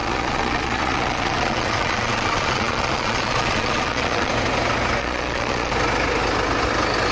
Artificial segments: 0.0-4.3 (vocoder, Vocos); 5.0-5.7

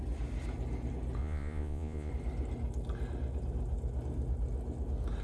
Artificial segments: 1.2-2.1 (vocoder, Vocos)

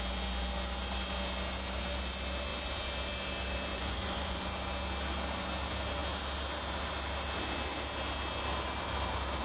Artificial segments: 3.7-4.4 (vocoder, Vocos)